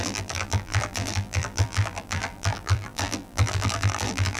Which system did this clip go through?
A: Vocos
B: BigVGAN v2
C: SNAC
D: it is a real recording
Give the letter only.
B